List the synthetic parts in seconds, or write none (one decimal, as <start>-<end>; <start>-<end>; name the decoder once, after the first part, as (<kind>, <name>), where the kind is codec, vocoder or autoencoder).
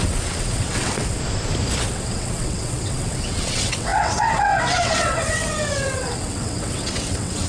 0.0-1.2 (vocoder, WaveNeXt); 1.8-7.5